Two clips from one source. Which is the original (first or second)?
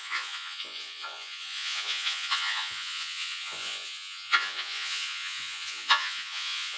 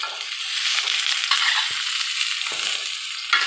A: second